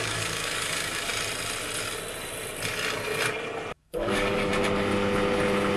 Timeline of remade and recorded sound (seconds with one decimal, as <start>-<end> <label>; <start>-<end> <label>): 0.0-1.1 remade; 1.1-3.7 recorded; 3.7-4.5 remade; 4.5-5.8 recorded